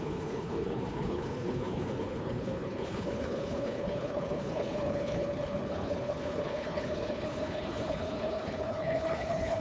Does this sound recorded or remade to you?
remade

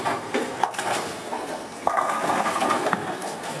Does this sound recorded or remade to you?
remade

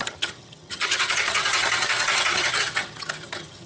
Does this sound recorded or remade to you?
remade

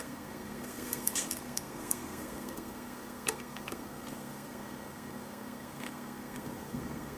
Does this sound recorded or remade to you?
remade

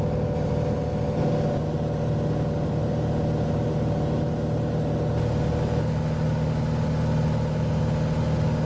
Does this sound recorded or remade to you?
recorded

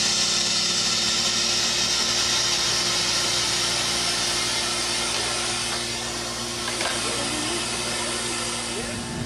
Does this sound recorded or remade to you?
recorded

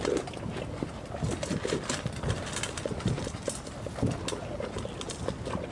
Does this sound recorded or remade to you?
recorded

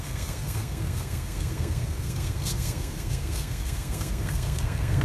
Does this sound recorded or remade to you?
remade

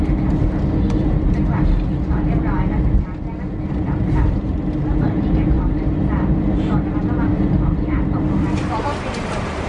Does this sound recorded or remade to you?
recorded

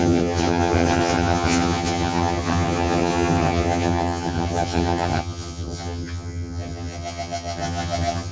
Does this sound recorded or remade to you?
remade